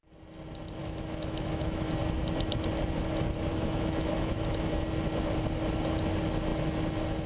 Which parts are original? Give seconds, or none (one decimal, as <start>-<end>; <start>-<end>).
0.0-0.8; 1.9-3.5; 4.7-7.3